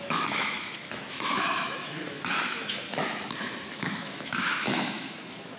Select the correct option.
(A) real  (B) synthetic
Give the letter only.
B